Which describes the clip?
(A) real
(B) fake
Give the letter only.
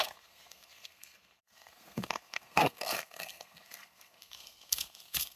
B